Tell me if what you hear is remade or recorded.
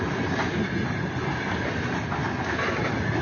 recorded